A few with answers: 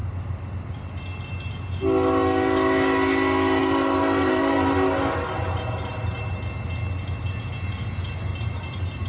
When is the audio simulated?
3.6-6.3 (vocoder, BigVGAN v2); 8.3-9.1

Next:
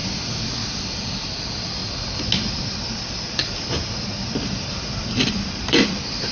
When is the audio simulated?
0.8-1.8 (vocoder, BigVGAN v2); 2.5-3.4; 5.3-6.3

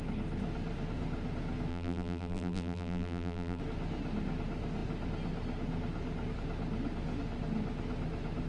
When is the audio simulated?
1.7-3.6 (vocoder, BigVGAN v2)

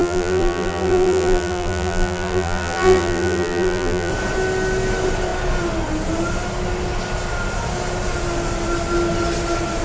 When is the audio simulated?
0.0-4.1 (vocoder, BigVGAN v2)

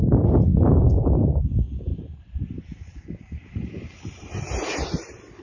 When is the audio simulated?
0.5-1.4 (vocoder, BigVGAN v2); 1.9-4.3

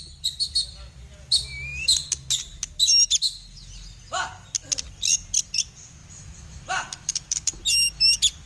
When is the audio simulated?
6.0-7.6 (vocoder, BigVGAN v2)

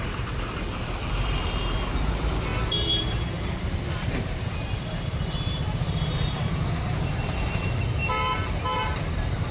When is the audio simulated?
0.0-9.5 (vocoder, BigVGAN v2)

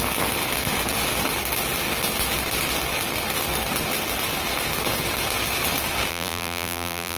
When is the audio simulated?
6.1-7.2 (vocoder, BigVGAN v2)